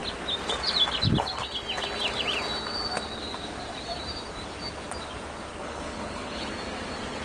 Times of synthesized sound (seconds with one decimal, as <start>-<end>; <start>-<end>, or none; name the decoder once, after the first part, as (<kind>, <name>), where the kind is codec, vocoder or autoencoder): 5.5-6.5 (codec, HILCodec)